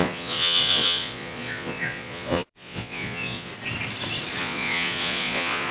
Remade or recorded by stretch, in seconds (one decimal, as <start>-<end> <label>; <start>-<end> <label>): 0.0-3.5 remade; 3.5-4.4 recorded; 4.4-5.7 remade